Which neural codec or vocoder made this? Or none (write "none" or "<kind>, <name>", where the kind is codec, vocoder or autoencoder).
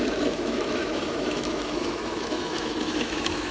autoencoder, DAC-VAE